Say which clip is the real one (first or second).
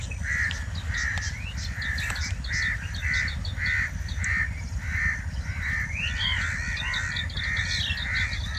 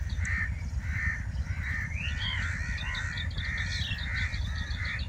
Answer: first